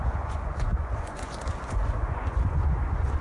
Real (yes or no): no